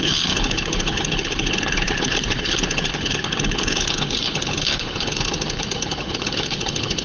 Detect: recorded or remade remade